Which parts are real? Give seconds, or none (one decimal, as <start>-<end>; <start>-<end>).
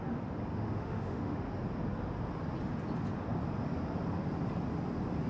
0.0-0.5; 1.5-5.3